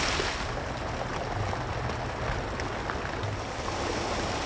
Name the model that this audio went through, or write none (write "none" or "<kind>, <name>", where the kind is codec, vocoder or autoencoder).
none